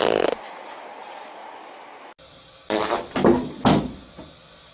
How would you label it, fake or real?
real